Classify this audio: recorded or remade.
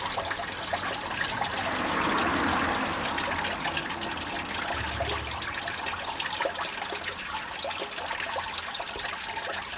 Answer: recorded